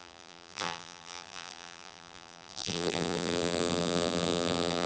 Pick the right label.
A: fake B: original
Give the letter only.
A